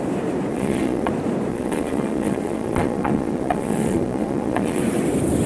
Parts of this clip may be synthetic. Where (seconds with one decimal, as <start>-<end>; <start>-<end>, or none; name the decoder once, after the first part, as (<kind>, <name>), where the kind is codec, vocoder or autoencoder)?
0.5-1.1 (vocoder, Vocos); 1.5-4.8